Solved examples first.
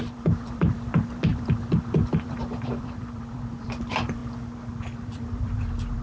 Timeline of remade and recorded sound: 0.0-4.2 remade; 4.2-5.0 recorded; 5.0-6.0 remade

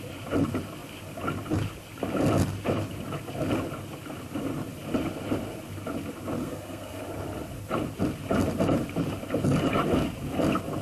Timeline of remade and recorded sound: 0.0-6.4 recorded; 6.4-7.0 remade; 7.0-10.8 recorded